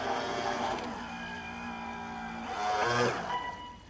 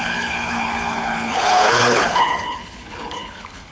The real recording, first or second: first